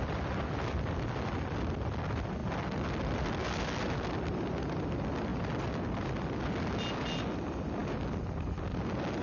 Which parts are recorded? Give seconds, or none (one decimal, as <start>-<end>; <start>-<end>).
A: 0.0-9.2

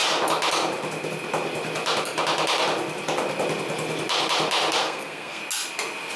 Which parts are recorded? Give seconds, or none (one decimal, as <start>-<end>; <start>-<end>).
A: 0.0-4.8; 5.4-6.2

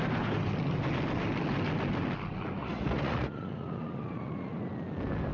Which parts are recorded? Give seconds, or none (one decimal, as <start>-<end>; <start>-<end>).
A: 0.0-2.6; 4.6-5.3

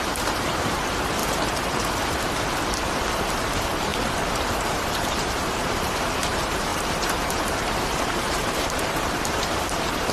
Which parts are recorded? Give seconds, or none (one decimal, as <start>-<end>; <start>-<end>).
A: 1.2-3.3; 3.9-4.6

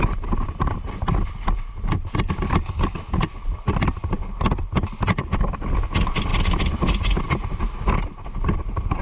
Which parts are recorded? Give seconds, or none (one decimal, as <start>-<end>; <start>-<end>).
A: 0.0-9.0

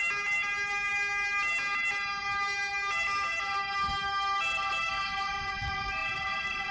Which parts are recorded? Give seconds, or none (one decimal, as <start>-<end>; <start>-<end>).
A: 0.0-6.0

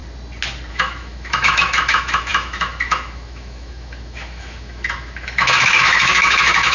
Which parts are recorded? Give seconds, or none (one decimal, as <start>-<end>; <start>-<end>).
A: 0.0-0.7